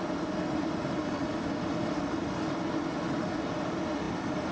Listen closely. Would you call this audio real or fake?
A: real